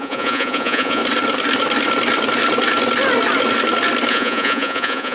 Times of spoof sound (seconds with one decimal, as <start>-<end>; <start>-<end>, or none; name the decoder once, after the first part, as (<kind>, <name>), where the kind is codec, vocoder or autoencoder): 0.0-1.0 (vocoder, Vocos); 4.1-5.1